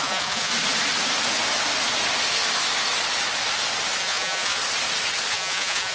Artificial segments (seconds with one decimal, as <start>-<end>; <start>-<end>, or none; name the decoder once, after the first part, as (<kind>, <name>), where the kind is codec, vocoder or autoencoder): 0.0-0.5 (vocoder, Vocos); 4.0-4.6; 5.3-5.9